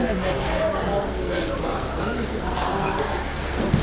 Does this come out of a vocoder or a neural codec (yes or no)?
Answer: yes